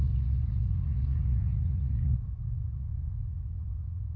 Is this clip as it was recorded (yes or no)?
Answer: no